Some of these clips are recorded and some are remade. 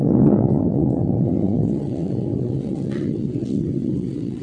remade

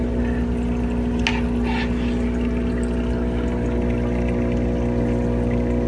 recorded